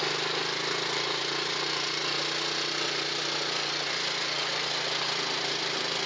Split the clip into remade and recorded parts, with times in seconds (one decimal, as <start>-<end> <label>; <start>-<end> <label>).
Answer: 0.0-6.1 recorded